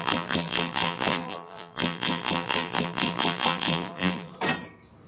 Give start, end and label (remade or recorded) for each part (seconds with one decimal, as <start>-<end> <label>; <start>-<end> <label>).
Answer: 0.0-4.3 remade; 4.3-5.1 recorded